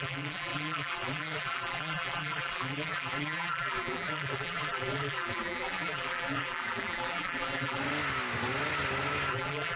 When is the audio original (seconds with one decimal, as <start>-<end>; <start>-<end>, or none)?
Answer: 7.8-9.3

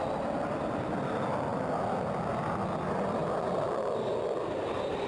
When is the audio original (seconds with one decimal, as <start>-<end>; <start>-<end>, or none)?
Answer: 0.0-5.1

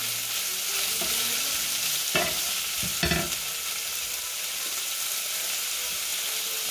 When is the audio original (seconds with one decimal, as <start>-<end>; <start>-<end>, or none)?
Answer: 0.0-6.7

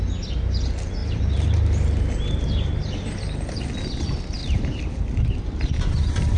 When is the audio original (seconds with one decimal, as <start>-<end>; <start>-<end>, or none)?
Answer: 0.0-1.0; 3.6-4.4; 5.0-6.4

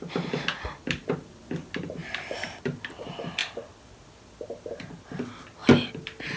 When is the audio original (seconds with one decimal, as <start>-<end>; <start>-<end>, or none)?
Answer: 0.0-6.4

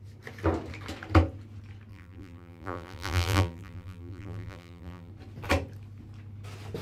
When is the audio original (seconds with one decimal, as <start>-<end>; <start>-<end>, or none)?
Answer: 0.0-1.9; 5.1-6.8